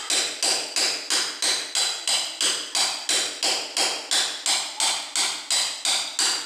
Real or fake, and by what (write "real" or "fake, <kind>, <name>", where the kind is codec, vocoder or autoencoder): real